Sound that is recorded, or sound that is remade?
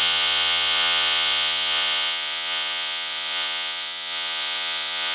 remade